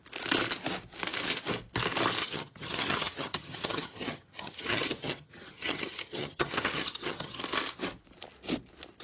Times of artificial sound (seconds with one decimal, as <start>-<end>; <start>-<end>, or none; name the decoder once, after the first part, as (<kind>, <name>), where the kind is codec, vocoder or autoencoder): 2.2-7.4 (vocoder, HiFi-GAN)